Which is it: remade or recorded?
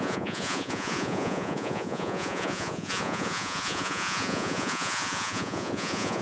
remade